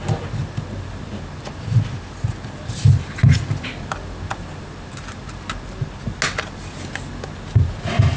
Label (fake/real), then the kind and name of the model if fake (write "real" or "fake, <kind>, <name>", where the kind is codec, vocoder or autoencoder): real